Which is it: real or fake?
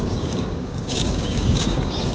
fake